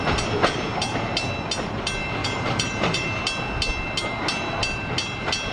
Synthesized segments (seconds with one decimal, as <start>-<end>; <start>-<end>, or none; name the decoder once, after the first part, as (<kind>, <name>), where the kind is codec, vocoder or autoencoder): 2.2-3.2 (vocoder, BigVGAN v2)